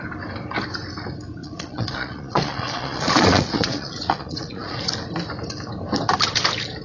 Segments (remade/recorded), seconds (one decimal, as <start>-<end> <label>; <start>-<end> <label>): 0.0-1.4 recorded; 1.4-4.8 remade; 4.8-6.8 recorded